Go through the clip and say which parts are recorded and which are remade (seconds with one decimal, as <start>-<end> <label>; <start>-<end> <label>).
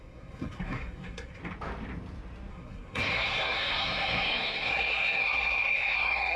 0.0-1.4 remade; 1.4-2.5 recorded; 2.5-6.4 remade